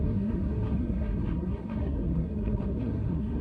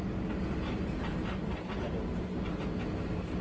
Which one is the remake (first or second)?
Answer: first